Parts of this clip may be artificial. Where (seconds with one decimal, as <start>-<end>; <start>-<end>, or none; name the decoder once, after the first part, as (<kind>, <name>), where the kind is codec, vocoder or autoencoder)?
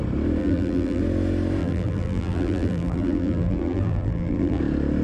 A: 0.4-1.0 (vocoder, BigVGAN v2); 1.6-4.6